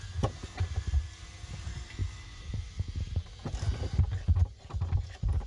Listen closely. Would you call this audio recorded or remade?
recorded